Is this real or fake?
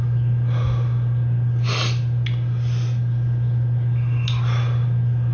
real